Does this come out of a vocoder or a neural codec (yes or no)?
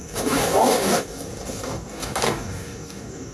yes